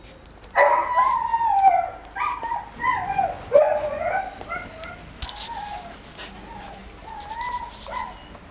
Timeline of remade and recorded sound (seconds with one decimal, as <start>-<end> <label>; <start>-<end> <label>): 0.0-2.9 recorded; 2.9-4.2 remade; 4.2-8.5 recorded